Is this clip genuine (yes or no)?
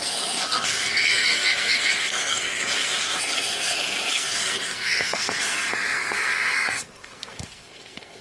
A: no